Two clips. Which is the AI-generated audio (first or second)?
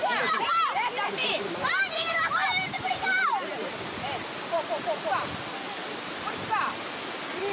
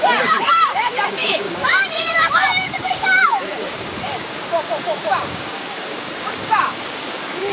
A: second